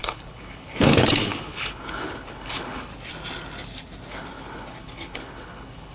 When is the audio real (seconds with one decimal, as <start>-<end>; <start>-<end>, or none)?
2.9-4.1